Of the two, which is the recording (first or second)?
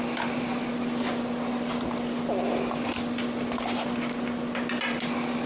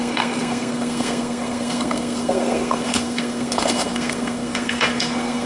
first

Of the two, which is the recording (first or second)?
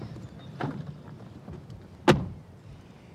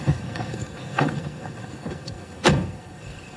first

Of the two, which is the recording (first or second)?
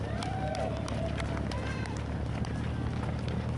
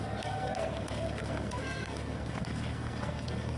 first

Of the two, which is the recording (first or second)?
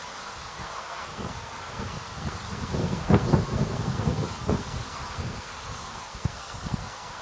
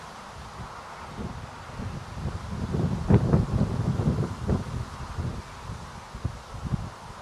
second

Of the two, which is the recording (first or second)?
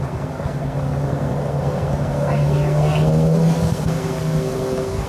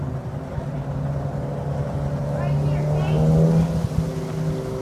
second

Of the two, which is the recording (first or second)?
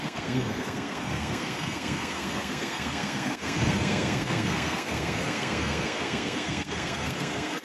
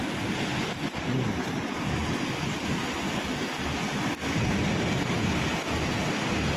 second